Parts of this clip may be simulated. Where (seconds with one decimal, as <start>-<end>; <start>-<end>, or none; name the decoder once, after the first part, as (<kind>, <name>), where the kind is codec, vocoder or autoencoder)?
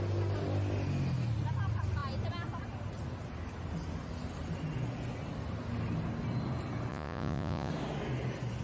6.9-7.7 (vocoder, Vocos)